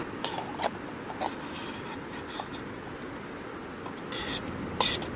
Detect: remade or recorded recorded